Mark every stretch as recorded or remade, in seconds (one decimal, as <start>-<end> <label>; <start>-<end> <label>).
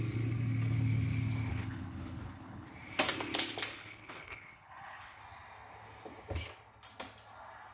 0.0-1.5 recorded; 1.5-2.7 remade; 2.7-3.7 recorded; 3.7-5.2 remade; 5.2-7.7 recorded